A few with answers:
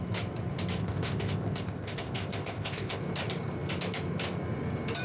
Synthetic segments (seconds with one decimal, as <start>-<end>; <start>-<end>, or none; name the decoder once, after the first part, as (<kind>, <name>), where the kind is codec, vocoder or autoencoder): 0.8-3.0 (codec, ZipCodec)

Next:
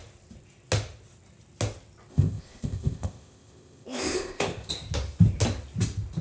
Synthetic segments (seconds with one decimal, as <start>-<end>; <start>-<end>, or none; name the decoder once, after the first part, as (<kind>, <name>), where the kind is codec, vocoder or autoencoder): 2.1-4.7 (codec, ZipCodec)

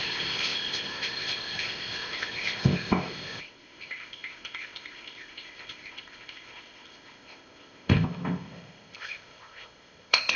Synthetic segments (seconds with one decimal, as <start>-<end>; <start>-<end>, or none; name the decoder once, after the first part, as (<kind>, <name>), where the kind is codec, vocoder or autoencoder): 0.0-10.4 (codec, ZipCodec)